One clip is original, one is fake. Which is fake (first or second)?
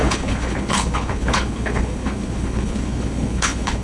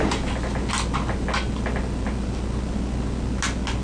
first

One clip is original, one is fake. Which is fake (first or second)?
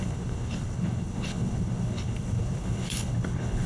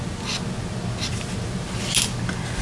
first